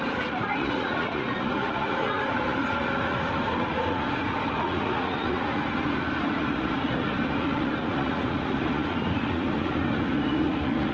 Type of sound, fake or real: fake